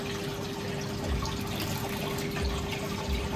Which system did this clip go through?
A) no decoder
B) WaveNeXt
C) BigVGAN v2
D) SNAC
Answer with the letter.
A